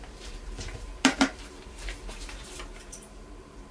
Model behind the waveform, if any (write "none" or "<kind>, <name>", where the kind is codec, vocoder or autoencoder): vocoder, BigVGAN v2